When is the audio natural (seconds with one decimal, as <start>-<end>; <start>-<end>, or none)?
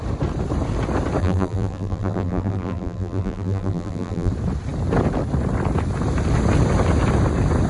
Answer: 0.0-1.2; 4.3-7.7